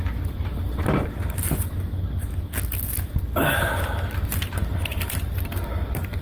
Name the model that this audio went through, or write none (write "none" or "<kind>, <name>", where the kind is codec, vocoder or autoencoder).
none